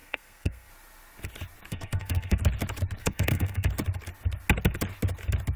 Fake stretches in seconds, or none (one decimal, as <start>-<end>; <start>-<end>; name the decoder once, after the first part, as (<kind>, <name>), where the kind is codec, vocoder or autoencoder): 0.0-0.7 (codec, SNAC); 1.7-2.4; 3.0-3.7